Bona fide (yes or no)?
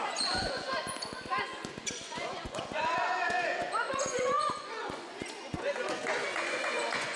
no